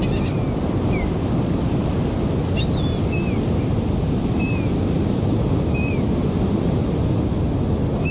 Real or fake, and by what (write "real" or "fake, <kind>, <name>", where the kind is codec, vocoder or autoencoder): real